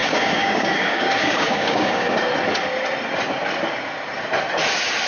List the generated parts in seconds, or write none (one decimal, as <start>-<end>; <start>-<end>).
0.0-2.2

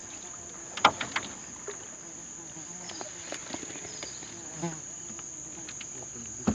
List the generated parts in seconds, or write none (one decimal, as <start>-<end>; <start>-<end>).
none

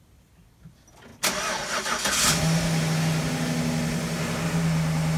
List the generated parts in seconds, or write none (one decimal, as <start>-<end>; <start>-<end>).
none

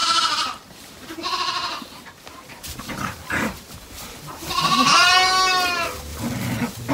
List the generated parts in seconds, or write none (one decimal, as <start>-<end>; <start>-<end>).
0.0-3.7